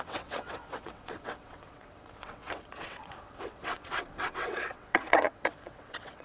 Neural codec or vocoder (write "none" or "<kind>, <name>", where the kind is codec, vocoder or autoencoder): vocoder, WaveNeXt